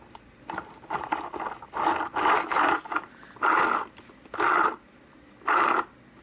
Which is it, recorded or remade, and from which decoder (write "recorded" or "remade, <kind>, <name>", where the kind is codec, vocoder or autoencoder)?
recorded